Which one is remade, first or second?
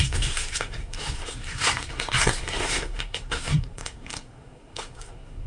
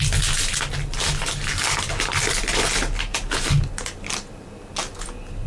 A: first